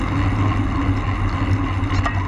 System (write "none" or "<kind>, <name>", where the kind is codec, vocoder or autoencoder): none